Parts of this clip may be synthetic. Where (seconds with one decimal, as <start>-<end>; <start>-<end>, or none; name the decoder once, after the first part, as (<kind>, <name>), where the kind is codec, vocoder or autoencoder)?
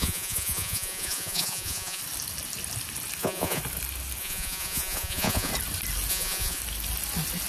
0.0-2.0 (vocoder, Vocos); 3.2-3.6; 4.2-5.5; 6.1-6.6